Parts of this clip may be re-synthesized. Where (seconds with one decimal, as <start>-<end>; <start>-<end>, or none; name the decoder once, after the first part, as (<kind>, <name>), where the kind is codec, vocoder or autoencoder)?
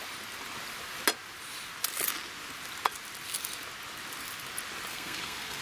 4.9-5.6 (codec, SNAC)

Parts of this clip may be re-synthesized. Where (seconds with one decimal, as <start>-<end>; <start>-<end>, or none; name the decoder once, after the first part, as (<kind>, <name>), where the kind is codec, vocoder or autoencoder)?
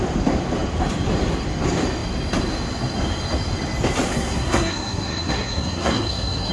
4.1-6.5 (codec, SNAC)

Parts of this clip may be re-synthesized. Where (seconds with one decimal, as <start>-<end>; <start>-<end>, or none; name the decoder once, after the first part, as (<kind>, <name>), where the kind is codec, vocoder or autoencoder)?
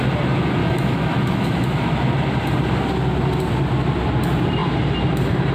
0.6-1.9 (autoencoder, DAC-VAE)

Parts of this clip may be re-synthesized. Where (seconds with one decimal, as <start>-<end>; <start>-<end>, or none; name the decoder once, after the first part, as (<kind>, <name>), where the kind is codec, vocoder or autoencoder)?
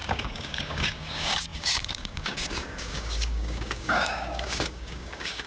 0.0-5.5 (codec, DAC)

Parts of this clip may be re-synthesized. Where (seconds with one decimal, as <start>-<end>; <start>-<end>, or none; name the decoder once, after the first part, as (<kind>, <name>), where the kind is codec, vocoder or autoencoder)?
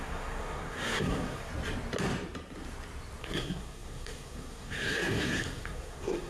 0.0-1.5 (codec, SNAC); 3.2-6.3